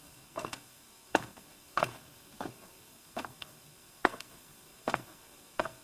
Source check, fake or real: fake